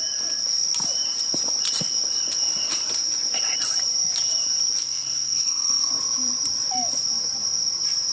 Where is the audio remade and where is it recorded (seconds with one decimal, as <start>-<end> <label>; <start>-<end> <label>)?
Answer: 0.0-4.8 recorded; 4.8-5.9 remade; 5.9-8.1 recorded